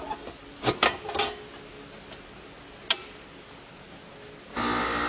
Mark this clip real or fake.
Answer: real